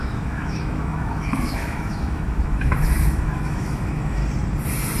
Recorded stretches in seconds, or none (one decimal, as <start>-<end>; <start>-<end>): 4.2-5.0